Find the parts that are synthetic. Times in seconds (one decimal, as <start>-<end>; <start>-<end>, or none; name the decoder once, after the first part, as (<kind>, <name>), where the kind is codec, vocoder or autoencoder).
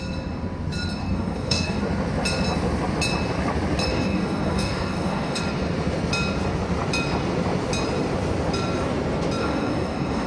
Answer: 1.0-1.8 (codec, DAC); 3.9-5.4; 9.4-10.3